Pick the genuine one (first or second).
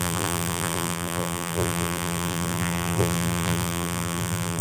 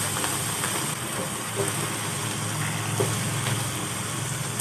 second